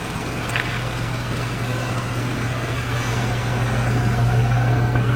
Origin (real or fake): fake